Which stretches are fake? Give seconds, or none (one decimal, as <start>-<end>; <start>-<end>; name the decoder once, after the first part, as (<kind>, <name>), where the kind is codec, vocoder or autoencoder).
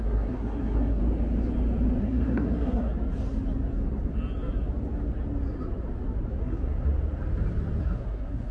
0.0-1.0 (codec, SNAC); 2.0-2.9; 6.4-6.9; 7.8-8.5